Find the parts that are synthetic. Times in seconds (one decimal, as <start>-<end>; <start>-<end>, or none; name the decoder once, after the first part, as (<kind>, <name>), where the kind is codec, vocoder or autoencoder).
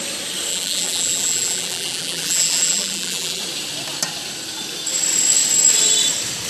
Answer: 0.5-3.4 (vocoder, BigVGAN v2)